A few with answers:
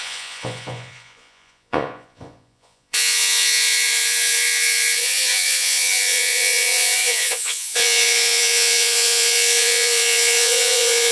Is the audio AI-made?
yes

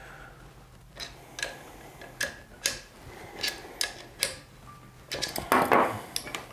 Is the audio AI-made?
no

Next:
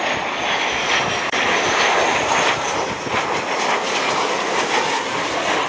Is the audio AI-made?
no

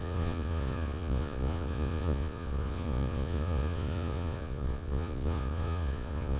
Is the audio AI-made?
yes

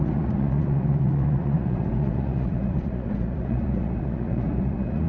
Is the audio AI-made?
yes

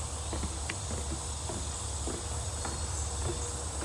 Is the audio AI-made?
no